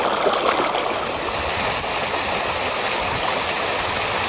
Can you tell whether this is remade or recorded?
recorded